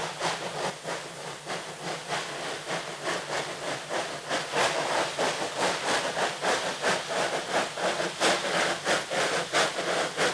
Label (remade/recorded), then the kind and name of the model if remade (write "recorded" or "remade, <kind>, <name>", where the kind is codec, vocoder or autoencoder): remade, vocoder, BigVGAN v2